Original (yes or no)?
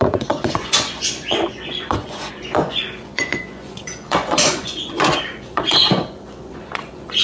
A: no